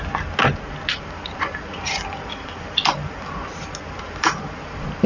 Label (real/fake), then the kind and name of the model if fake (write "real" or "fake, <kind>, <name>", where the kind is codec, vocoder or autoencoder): real